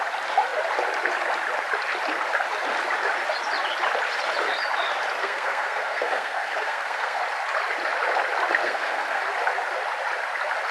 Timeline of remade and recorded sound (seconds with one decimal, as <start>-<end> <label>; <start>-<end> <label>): 0.0-5.2 recorded; 5.2-7.2 remade; 7.2-8.6 recorded; 8.6-9.2 remade; 9.2-10.7 recorded